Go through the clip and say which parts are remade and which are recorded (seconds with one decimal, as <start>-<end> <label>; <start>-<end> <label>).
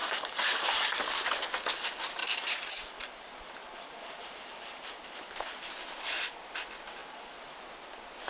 0.0-1.0 remade; 1.0-2.2 recorded; 2.2-5.7 remade; 5.7-7.0 recorded; 7.0-7.6 remade; 7.6-8.3 recorded